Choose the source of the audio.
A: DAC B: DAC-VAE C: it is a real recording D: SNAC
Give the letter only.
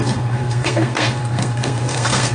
D